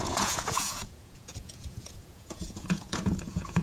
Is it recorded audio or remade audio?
remade